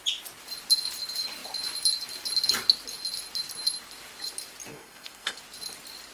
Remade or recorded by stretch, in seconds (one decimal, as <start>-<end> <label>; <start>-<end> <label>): 0.0-4.7 recorded; 4.7-5.4 remade; 5.4-6.1 recorded